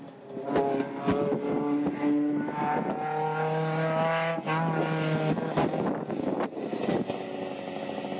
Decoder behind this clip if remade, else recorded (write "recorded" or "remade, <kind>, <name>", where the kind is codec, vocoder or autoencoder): recorded